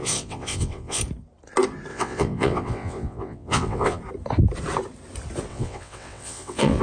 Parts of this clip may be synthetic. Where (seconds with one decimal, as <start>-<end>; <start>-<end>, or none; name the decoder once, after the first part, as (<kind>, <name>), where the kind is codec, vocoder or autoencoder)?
0.0-1.0 (vocoder, WaveNeXt); 1.9-4.0; 5.5-6.8